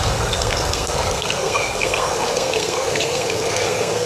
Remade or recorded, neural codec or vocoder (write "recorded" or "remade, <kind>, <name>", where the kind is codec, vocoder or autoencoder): remade, codec, SNAC